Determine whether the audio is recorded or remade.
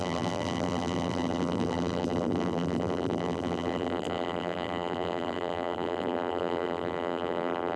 remade